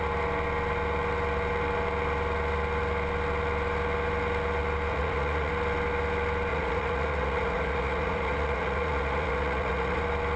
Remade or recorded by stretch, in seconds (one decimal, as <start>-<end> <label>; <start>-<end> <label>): 0.0-4.9 recorded; 4.9-5.5 remade; 5.5-6.5 recorded; 6.5-10.0 remade; 10.0-10.4 recorded

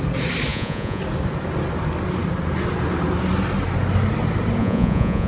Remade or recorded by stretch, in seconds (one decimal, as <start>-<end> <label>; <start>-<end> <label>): 0.0-0.5 recorded; 0.5-1.0 remade; 1.0-4.6 recorded; 4.6-5.3 remade

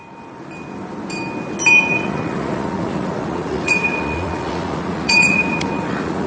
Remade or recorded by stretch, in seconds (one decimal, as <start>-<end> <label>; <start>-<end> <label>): 0.0-1.7 recorded; 1.7-6.3 remade

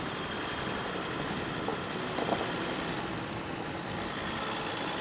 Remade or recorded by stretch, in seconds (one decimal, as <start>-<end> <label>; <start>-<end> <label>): 0.0-5.0 recorded

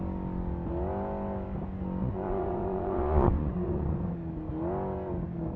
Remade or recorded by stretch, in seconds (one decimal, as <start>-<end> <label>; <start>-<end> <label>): 0.0-2.0 recorded; 2.0-4.0 remade; 4.0-5.6 recorded

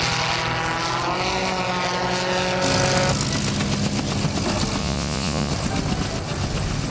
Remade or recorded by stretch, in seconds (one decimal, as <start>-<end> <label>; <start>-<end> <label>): 0.0-4.8 recorded; 4.8-5.5 remade; 5.5-6.9 recorded